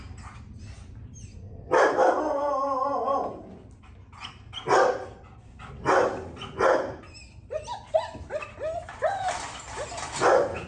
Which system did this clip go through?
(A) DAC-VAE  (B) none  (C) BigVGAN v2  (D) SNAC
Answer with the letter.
B